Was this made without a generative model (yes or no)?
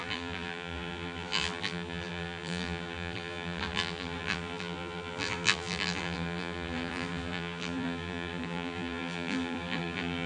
no